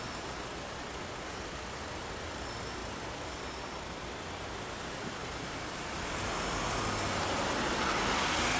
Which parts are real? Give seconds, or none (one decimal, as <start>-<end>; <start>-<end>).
0.0-8.6